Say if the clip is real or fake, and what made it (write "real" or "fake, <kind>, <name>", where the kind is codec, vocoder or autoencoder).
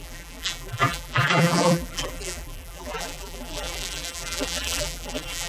fake, vocoder, BigVGAN v2